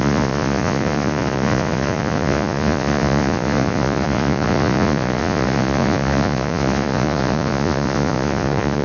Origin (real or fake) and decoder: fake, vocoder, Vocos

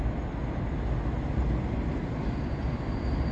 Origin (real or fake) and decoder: real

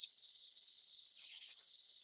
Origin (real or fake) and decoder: fake, codec, DAC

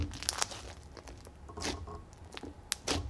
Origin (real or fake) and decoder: real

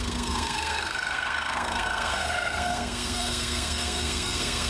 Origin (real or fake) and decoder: fake, codec, SNAC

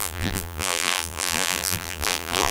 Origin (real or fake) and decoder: fake, vocoder, BigVGAN v2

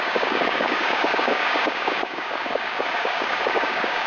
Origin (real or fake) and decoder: fake, codec, DAC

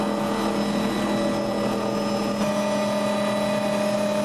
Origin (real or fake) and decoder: real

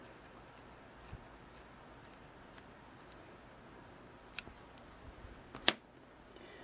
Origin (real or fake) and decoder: real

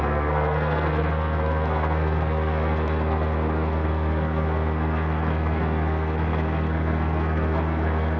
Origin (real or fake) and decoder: fake, codec, SNAC